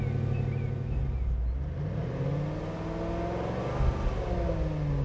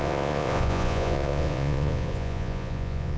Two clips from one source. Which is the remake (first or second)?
second